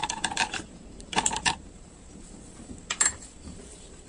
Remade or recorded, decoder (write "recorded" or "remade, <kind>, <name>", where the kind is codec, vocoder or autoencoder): remade, vocoder, BigVGAN v2